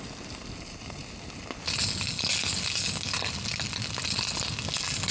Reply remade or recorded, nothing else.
recorded